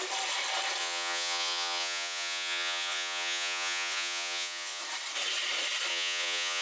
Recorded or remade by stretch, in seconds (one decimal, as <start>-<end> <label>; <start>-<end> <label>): 0.0-0.8 recorded; 0.8-4.8 remade; 4.8-5.9 recorded; 5.9-6.6 remade